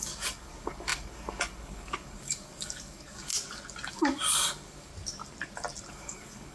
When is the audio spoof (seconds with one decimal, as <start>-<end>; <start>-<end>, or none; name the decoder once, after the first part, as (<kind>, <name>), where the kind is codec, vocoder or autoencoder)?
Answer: 0.0-3.3 (codec, DAC); 3.9-4.9; 5.9-6.5